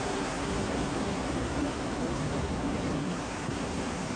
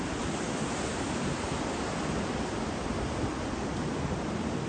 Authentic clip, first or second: second